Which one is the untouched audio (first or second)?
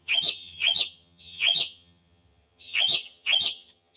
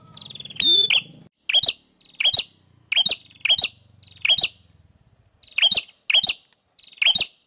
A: second